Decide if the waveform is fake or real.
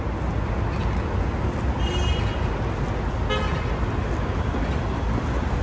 real